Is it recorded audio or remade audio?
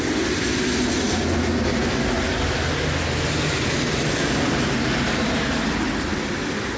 recorded